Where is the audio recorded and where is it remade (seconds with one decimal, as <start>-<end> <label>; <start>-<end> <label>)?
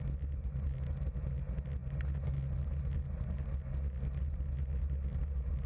0.0-5.7 recorded